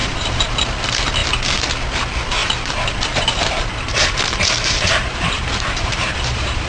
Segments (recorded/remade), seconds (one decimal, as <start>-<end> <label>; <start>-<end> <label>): 0.0-0.6 remade; 0.6-2.4 recorded; 2.4-6.7 remade